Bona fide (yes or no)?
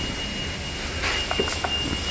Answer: yes